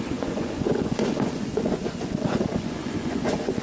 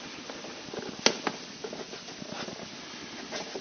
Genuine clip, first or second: second